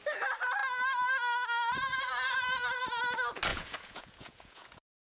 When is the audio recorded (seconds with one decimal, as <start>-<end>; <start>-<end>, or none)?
0.0-3.5